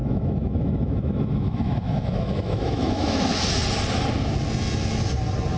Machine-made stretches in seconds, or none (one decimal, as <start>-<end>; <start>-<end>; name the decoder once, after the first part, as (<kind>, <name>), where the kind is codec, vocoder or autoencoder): 0.0-3.4 (autoencoder, DAC-VAE)